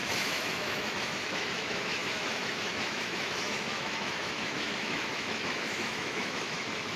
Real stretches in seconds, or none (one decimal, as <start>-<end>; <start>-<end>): none